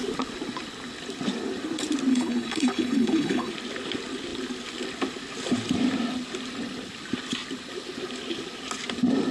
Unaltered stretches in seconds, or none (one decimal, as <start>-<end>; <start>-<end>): 0.0-2.1; 3.5-9.3